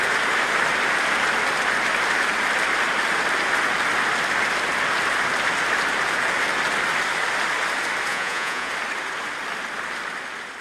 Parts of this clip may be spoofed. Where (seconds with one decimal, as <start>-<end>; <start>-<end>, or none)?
8.1-8.7